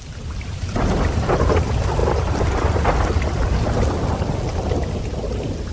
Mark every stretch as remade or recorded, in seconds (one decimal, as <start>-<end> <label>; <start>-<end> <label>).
0.0-5.7 recorded